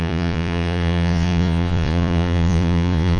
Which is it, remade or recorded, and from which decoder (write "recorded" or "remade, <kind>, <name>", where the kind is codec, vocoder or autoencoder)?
remade, vocoder, Vocos